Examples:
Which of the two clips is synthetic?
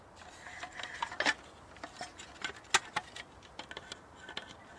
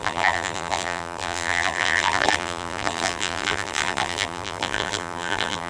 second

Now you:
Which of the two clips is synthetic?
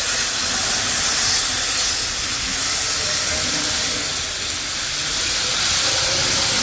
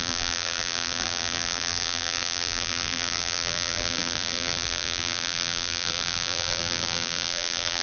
second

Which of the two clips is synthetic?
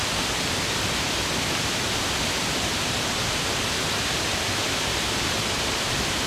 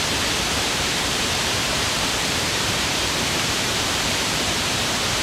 second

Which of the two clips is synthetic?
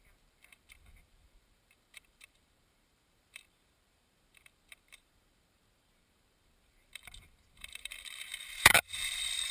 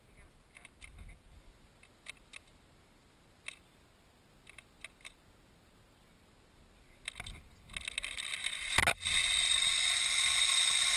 first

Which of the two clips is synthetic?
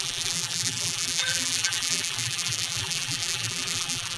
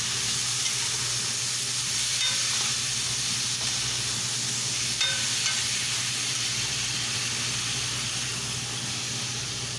first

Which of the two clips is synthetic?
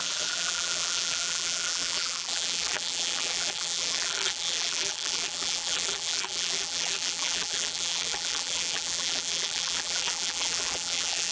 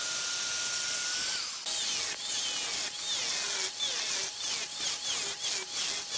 first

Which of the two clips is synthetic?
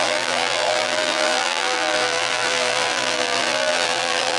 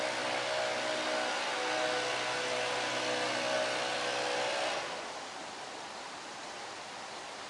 first